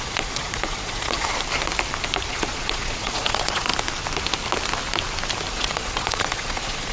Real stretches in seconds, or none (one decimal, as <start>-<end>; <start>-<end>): 1.3-2.3; 3.7-5.5